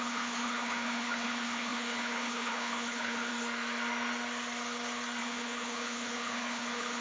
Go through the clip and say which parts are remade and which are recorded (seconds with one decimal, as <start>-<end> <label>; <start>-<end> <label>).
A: 0.0-3.3 remade; 3.3-5.2 recorded; 5.2-7.0 remade